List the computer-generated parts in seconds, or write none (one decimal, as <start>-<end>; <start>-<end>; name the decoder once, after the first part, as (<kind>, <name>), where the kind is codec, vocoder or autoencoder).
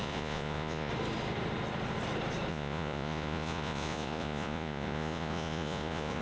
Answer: 0.0-0.9 (vocoder, Vocos); 2.5-6.2